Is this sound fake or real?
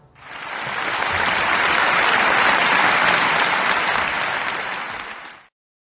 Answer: real